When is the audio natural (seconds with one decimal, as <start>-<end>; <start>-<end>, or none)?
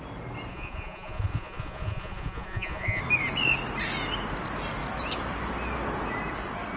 0.0-0.5; 3.0-6.8